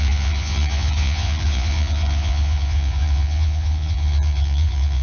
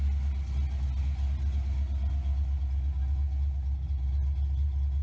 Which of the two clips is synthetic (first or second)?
first